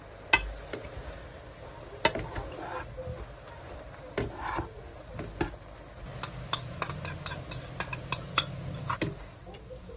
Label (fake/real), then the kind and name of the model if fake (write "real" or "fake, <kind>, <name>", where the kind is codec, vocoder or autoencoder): real